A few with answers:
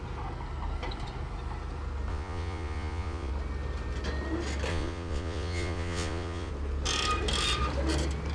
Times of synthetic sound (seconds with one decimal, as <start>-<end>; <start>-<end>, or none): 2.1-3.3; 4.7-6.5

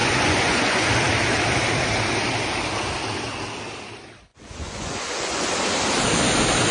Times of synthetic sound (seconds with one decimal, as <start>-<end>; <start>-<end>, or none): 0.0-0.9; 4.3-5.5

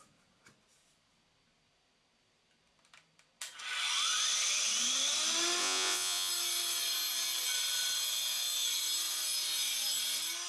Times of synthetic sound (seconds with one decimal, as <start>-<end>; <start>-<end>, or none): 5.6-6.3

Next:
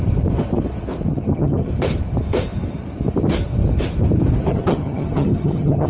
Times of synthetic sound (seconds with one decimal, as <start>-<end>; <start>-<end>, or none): 1.1-1.7; 4.5-5.9

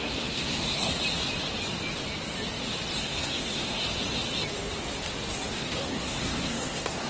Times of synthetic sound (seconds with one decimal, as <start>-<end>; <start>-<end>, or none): 0.0-0.9; 3.0-3.8; 5.5-7.1

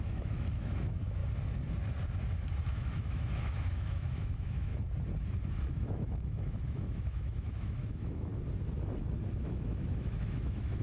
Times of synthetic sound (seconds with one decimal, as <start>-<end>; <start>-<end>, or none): 0.0-1.2; 2.7-4.7; 5.7-8.3; 9.4-10.8

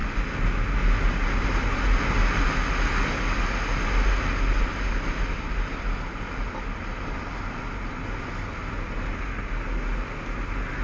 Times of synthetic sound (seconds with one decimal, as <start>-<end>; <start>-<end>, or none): none

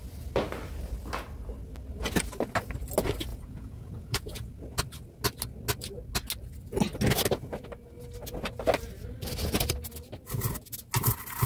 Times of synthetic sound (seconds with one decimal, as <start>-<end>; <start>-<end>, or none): 3.3-4.5